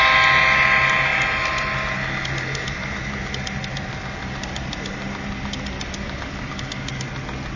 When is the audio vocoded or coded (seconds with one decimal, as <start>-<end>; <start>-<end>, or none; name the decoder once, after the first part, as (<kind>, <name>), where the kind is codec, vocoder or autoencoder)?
none